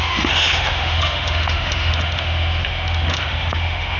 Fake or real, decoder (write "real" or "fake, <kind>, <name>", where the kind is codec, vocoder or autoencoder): fake, autoencoder, DAC-VAE